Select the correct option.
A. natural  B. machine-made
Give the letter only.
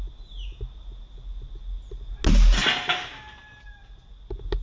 A